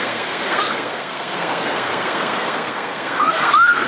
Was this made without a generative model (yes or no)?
no